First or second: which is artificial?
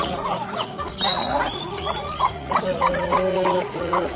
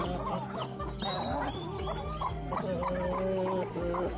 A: first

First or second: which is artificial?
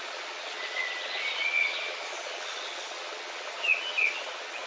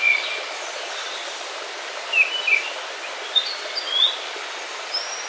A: first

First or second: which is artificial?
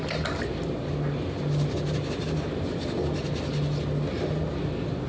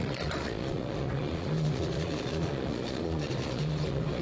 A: second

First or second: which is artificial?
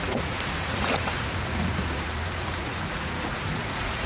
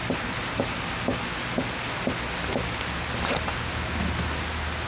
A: first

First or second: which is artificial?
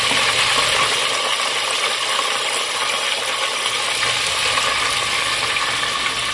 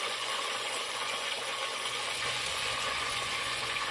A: second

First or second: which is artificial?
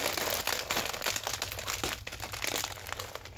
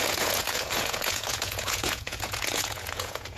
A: second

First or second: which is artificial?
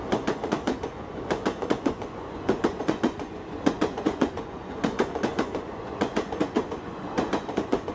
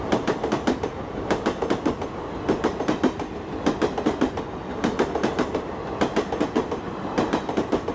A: first